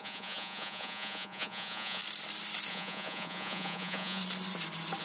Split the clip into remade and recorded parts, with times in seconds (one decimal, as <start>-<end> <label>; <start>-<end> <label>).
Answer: 0.0-2.0 remade; 2.0-2.7 recorded; 2.7-4.2 remade; 4.2-5.0 recorded